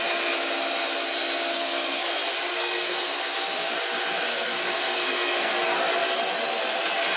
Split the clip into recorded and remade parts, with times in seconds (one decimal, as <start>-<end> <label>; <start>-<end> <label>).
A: 0.0-1.5 recorded; 1.5-2.1 remade; 2.1-2.5 recorded; 2.5-3.7 remade; 3.7-4.3 recorded; 4.3-5.5 remade; 5.5-7.2 recorded